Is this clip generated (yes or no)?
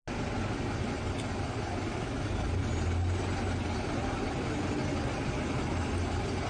no